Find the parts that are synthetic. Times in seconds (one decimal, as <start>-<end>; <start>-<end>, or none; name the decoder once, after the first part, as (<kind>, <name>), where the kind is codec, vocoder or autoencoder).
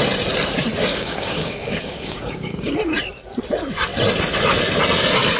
0.9-2.7 (codec, DAC)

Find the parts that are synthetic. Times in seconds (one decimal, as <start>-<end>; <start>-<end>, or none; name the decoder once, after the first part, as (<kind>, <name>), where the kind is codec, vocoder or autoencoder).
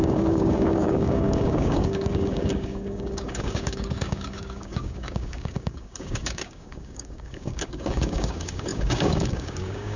0.0-10.0 (codec, DAC)